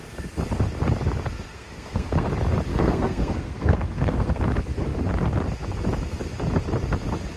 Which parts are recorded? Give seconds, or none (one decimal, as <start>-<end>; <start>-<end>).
0.0-1.5; 2.3-2.7; 4.4-7.4